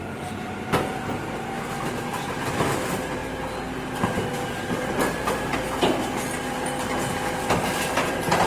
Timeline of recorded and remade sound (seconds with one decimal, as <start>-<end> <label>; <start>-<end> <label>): 0.0-8.5 recorded

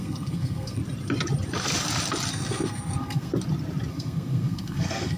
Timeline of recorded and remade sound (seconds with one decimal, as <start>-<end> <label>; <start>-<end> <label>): 0.0-0.8 remade; 0.8-2.3 recorded; 2.3-3.3 remade; 3.3-3.9 recorded; 3.9-5.2 remade

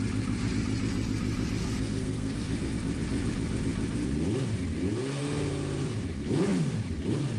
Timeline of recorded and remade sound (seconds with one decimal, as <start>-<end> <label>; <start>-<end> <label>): 0.0-1.6 recorded; 1.6-2.7 remade; 2.7-7.4 recorded

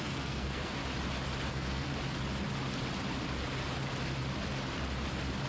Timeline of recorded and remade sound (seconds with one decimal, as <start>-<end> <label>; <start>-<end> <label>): 0.0-0.8 remade; 0.8-1.5 recorded; 1.5-1.9 remade; 1.9-5.5 recorded